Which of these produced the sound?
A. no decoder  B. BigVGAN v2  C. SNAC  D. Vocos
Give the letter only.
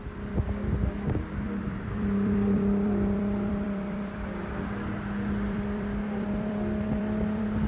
B